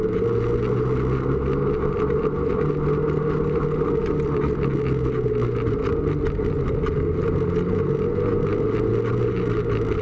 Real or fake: real